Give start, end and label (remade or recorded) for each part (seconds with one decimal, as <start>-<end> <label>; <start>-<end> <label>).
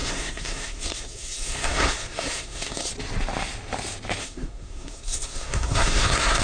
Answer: 0.0-2.9 remade; 2.9-4.2 recorded; 4.2-6.4 remade